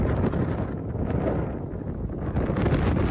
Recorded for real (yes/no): yes